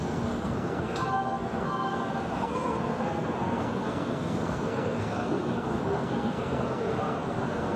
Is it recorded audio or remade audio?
remade